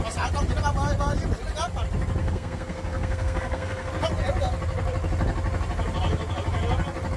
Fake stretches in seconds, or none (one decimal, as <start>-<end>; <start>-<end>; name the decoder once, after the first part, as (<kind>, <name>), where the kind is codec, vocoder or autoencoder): 2.2-3.9 (codec, SNAC)